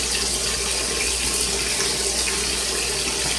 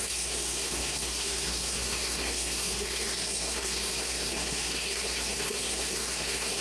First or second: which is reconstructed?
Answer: second